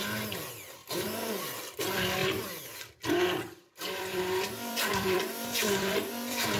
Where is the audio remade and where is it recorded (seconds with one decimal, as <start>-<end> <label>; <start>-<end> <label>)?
0.0-0.8 recorded; 0.8-1.8 remade; 1.8-2.2 recorded; 2.2-6.6 remade